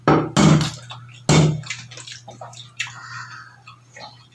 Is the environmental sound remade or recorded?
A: recorded